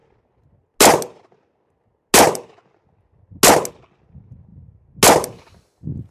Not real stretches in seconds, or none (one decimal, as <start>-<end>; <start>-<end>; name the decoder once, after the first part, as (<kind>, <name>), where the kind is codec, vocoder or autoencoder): none